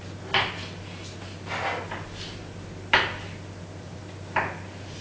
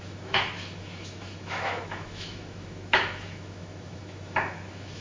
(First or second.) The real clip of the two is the first